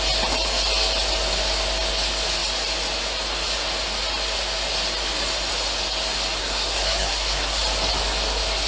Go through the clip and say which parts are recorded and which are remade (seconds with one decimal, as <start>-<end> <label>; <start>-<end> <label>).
0.0-6.4 recorded; 6.4-7.6 remade; 7.6-8.7 recorded